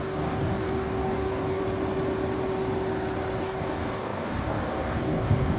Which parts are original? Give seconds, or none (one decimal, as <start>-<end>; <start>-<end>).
1.6-3.4